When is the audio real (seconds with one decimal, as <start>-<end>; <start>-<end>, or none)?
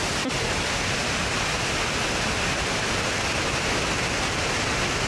0.0-5.1